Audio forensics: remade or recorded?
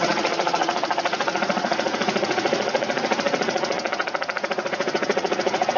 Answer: remade